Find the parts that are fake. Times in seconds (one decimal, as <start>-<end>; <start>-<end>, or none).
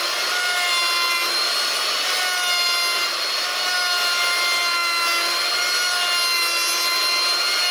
none